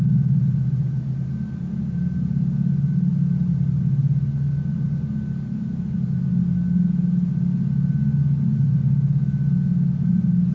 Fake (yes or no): no